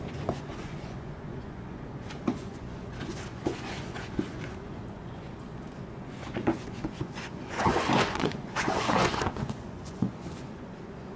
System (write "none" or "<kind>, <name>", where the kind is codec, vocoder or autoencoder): vocoder, Vocos